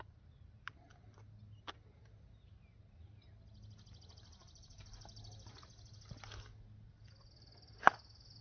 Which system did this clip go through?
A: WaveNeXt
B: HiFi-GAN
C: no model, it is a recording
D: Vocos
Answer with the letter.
C